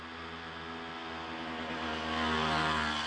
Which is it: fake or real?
real